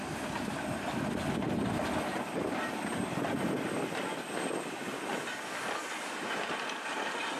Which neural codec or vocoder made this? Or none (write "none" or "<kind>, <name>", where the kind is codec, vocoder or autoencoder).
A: none